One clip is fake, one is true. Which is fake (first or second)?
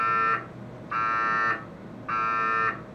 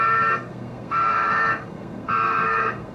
second